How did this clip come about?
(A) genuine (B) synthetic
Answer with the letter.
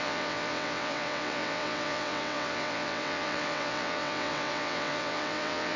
B